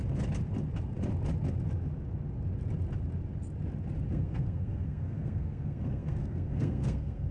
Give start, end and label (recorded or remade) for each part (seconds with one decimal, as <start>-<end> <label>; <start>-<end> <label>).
0.0-4.1 recorded; 4.1-7.3 remade